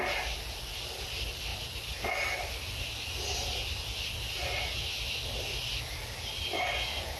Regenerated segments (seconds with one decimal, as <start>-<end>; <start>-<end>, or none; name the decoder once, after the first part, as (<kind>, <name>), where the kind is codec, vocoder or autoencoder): none